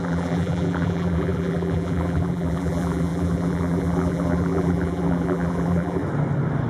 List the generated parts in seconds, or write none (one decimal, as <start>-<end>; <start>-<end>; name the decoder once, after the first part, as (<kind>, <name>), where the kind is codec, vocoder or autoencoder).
0.0-6.0 (vocoder, BigVGAN v2)